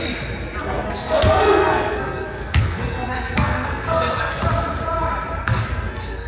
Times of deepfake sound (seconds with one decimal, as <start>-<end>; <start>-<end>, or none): 0.6-4.4; 5.4-6.3